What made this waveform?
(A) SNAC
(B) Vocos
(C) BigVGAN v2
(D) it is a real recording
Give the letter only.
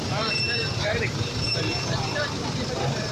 C